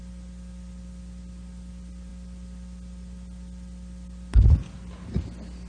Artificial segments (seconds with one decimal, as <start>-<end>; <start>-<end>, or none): none